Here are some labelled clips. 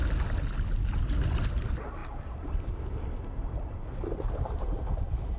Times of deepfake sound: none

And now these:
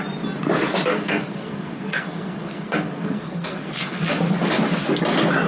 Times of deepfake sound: 0.9-4.2 (codec, SNAC)

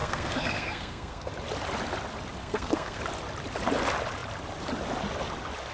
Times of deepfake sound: 0.0-1.3 (codec, SNAC); 2.4-3.0

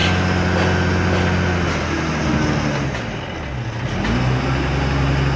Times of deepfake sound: none